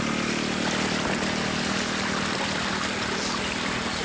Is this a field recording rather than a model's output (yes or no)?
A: yes